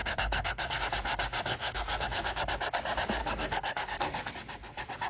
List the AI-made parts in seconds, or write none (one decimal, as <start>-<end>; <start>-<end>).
0.0-0.8; 1.5-2.4; 3.2-4.3